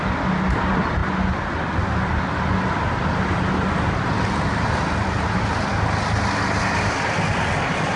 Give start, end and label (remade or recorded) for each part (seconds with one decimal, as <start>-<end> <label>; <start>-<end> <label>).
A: 0.0-8.0 recorded